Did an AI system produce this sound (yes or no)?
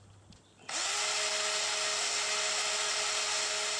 no